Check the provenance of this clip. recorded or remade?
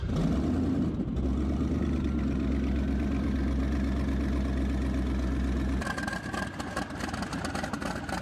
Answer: recorded